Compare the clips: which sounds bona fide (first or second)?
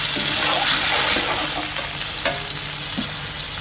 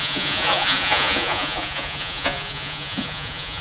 first